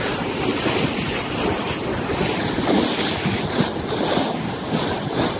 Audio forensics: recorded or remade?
recorded